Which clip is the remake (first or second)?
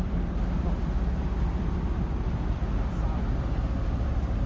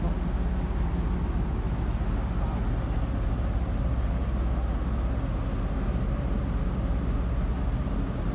first